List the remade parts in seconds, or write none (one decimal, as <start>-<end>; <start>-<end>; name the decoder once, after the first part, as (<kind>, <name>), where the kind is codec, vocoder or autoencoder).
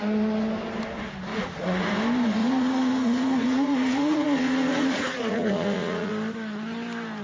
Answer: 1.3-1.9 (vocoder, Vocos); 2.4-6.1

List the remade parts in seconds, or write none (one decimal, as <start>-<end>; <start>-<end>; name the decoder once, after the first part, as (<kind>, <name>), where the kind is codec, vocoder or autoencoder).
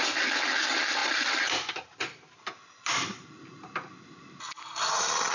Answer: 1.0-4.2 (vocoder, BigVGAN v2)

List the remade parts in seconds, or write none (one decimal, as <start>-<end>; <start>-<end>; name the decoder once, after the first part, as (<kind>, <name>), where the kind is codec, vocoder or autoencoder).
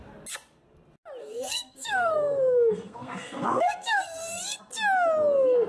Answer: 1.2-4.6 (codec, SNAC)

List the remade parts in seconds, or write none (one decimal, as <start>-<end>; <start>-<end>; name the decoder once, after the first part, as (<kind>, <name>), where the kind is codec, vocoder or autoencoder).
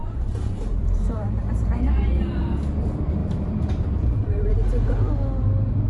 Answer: 0.0-2.4 (vocoder, BigVGAN v2); 3.2-4.5